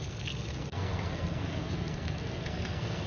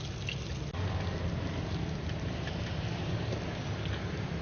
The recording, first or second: second